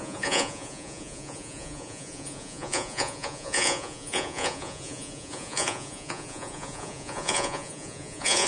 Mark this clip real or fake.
fake